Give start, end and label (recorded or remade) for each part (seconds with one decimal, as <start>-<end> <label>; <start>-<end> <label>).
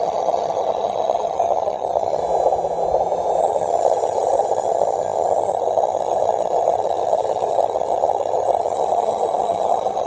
0.0-2.2 remade; 2.2-3.4 recorded; 3.4-10.1 remade